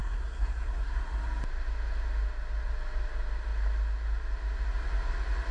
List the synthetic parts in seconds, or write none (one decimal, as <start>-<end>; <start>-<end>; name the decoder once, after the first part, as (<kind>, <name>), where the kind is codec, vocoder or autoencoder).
0.0-1.0 (codec, SNAC)